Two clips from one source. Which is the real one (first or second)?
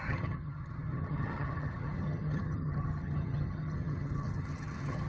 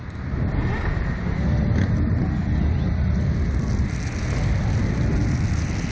second